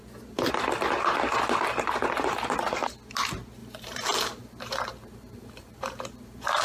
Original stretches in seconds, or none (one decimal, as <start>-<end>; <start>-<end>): 0.0-3.6